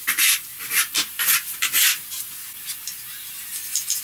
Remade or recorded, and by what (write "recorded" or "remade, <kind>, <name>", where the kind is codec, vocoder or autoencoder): recorded